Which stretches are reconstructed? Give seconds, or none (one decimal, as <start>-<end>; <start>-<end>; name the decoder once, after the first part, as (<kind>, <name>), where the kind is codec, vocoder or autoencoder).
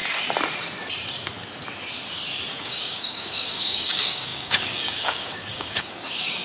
2.5-6.4 (codec, DAC)